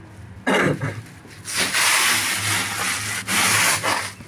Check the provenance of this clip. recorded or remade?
recorded